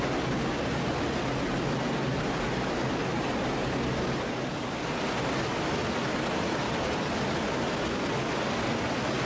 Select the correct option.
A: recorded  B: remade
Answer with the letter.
A